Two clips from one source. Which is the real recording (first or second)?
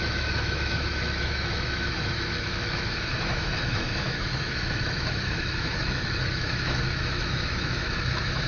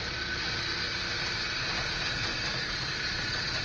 second